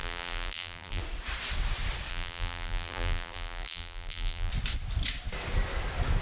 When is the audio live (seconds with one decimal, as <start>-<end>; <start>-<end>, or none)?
1.0-2.1; 4.5-6.2